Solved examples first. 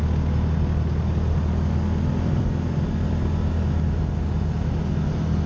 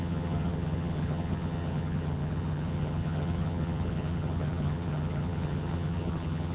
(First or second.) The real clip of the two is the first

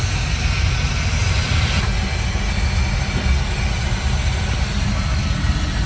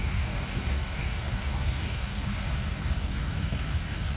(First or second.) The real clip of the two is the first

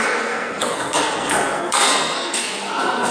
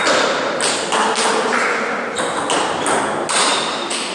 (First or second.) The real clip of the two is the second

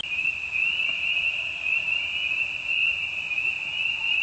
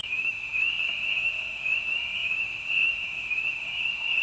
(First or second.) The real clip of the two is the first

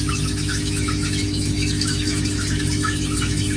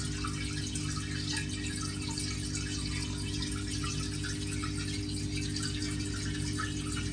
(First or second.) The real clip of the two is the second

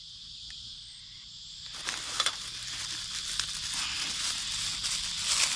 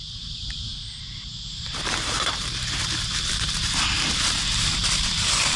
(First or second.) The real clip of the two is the first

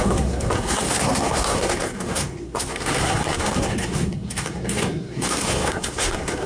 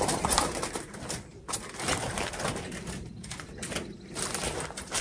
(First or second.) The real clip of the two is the second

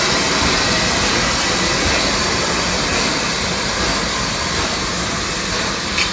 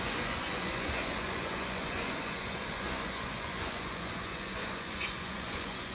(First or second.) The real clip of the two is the first